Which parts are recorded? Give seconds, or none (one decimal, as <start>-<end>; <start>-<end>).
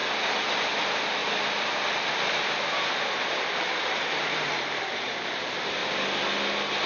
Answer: 0.0-0.6; 5.8-6.9